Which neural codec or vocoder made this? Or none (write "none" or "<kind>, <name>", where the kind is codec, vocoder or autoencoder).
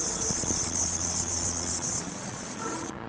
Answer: vocoder, Vocos